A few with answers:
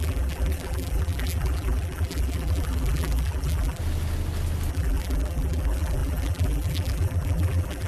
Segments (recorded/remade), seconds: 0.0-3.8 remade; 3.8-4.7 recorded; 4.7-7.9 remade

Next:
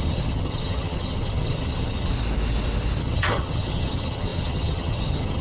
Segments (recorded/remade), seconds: 0.0-2.1 remade; 2.1-3.0 recorded; 3.0-5.4 remade

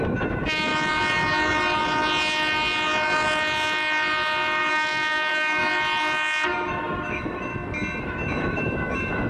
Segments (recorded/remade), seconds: 0.0-0.7 remade; 0.7-4.7 recorded; 4.7-5.6 remade; 5.6-6.7 recorded; 6.7-7.5 remade; 7.5-8.0 recorded; 8.0-9.3 remade

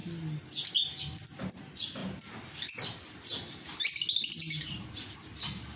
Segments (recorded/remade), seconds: 0.0-5.8 recorded

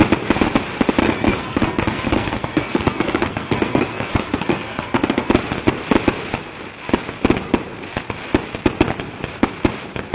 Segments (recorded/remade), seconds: 0.0-1.0 recorded; 1.0-5.3 remade; 5.3-10.1 recorded

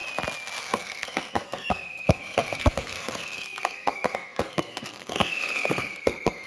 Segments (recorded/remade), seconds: 0.0-0.6 recorded; 0.6-6.5 remade